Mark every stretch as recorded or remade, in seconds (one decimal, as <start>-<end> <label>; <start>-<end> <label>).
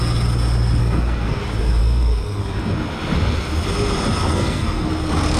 0.0-0.8 recorded; 0.8-1.4 remade; 1.4-1.8 recorded; 1.8-2.4 remade; 2.4-4.3 recorded; 4.3-4.9 remade; 4.9-5.4 recorded